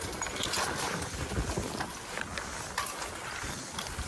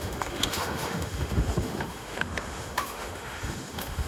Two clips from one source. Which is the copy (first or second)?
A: second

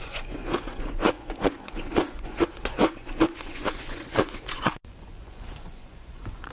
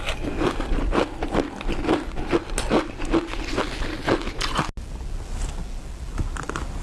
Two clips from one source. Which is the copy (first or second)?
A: first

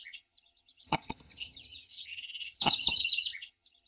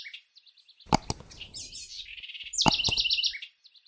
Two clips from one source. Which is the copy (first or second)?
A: first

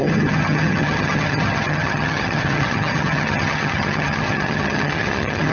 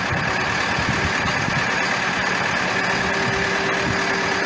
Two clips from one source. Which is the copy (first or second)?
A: first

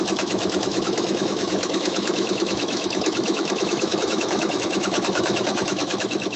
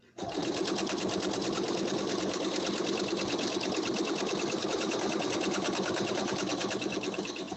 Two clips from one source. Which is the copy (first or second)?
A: first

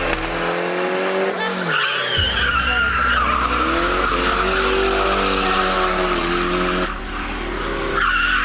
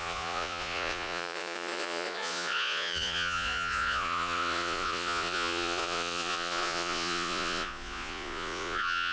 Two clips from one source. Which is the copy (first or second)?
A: second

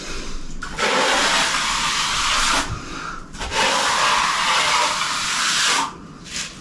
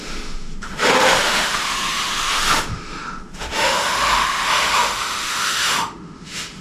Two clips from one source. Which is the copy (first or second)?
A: second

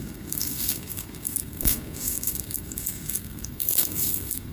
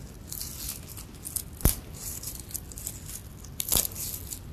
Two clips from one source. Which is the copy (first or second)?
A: first